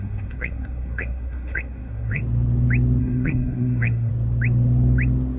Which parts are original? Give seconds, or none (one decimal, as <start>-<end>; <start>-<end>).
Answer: 2.2-3.0; 4.1-5.4